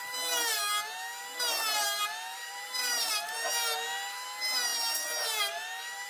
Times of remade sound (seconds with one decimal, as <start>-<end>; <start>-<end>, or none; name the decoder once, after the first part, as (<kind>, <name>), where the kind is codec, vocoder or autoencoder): 2.3-3.1 (vocoder, BigVGAN v2)

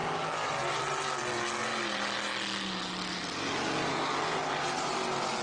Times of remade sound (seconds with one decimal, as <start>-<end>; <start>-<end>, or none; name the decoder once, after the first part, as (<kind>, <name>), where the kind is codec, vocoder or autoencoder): none

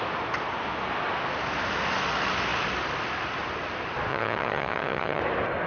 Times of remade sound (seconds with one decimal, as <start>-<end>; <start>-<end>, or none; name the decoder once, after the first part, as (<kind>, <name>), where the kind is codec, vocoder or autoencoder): 4.1-5.2 (vocoder, HiFi-GAN)

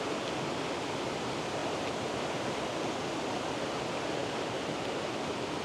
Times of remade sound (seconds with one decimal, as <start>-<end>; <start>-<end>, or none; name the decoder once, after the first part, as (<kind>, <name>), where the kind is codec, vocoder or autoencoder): 1.6-3.1 (vocoder, BigVGAN v2); 4.2-4.8

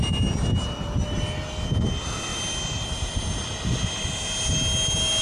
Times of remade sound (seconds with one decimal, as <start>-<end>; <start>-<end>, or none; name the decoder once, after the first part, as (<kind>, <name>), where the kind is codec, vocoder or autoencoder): 0.6-1.2 (vocoder, BigVGAN v2)